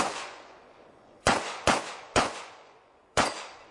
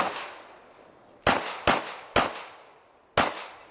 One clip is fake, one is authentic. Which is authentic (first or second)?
second